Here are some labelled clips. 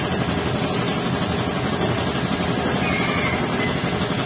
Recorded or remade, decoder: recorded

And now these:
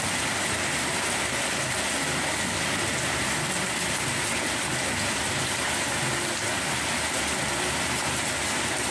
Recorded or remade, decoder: recorded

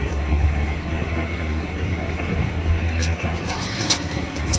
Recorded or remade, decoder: remade, codec, SNAC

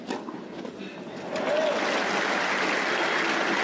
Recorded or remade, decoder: recorded